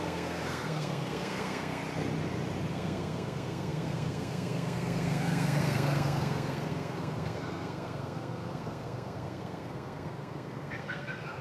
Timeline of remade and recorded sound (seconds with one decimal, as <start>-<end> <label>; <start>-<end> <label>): 0.0-1.8 remade; 1.8-2.7 recorded; 2.7-11.4 remade